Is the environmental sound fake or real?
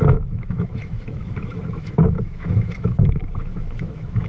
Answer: fake